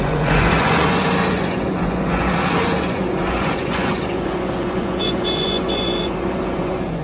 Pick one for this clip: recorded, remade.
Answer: remade